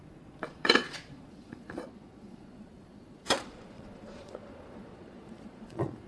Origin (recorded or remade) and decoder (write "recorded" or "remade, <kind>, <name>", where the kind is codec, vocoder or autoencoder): remade, vocoder, Vocos